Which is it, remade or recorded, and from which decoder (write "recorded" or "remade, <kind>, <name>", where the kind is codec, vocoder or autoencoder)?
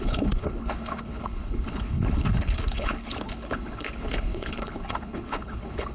remade, codec, HILCodec